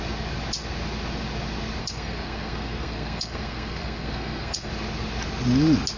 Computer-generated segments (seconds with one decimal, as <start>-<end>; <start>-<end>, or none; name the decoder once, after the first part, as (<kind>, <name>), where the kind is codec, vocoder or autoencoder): 1.8-4.7 (codec, SNAC)